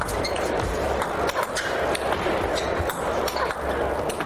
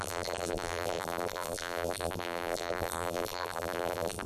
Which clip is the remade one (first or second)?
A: second